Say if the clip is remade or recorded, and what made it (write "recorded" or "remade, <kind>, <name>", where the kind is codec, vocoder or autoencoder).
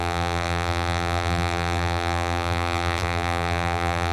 remade, vocoder, BigVGAN v2